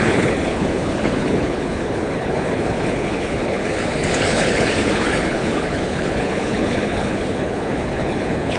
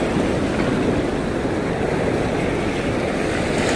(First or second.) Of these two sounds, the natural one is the second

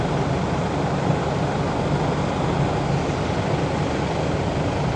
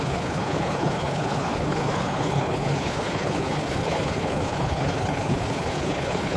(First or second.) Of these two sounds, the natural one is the first